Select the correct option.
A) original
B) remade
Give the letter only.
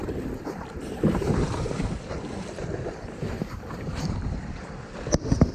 B